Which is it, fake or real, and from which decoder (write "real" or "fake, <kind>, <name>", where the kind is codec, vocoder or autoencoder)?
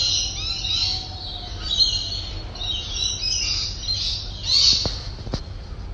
real